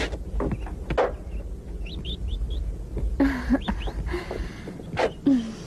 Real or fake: real